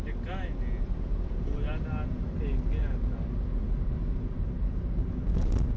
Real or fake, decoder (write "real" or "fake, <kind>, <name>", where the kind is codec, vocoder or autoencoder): real